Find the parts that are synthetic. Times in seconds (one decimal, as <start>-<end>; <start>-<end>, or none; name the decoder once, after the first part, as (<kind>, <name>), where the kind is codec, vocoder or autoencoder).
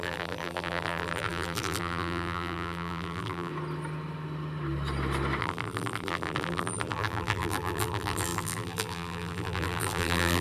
0.0-3.5 (vocoder, BigVGAN v2); 5.4-10.4